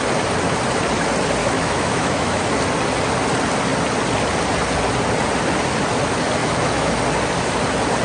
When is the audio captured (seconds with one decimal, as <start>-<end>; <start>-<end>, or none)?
0.0-1.4; 2.4-6.4; 7.0-8.0